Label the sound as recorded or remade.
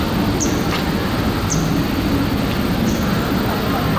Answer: recorded